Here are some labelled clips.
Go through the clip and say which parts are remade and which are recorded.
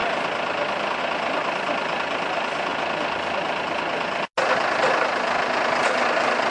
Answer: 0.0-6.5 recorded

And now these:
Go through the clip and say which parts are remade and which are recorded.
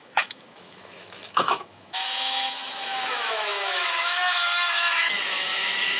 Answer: 0.0-6.0 remade